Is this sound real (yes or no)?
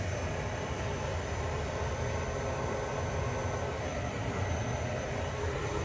yes